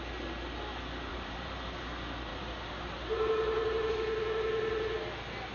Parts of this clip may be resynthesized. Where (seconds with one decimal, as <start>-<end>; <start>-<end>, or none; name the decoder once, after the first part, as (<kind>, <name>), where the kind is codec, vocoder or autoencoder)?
1.1-1.8 (vocoder, BigVGAN v2); 2.3-3.9